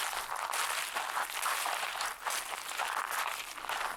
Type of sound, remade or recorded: recorded